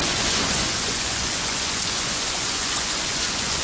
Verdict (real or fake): fake